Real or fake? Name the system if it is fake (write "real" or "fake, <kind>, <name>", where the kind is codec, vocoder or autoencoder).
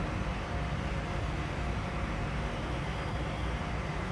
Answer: real